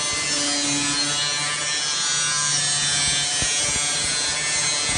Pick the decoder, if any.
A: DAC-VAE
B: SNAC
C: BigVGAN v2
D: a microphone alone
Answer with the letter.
D